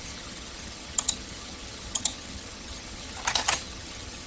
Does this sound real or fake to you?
fake